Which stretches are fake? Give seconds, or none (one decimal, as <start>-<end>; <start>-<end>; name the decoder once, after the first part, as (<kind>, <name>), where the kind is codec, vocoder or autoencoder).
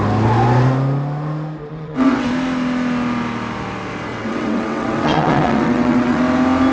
1.7-2.3 (vocoder, WaveNeXt); 4.1-6.2